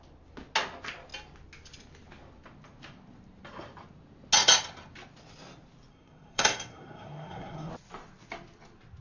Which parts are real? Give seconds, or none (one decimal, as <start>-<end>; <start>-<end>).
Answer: 0.0-5.9; 7.7-9.0